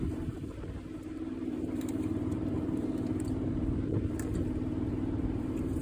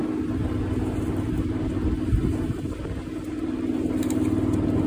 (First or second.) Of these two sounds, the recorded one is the second